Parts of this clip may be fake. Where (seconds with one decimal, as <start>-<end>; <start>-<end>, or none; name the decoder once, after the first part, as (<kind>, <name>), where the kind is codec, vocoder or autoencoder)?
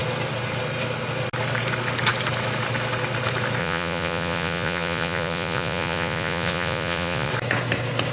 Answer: 3.6-7.3 (vocoder, Vocos)